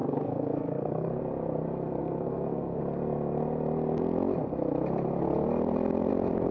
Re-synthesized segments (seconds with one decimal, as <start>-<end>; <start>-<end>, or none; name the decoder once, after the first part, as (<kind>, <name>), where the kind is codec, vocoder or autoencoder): 0.0-1.2 (codec, SNAC); 2.0-2.8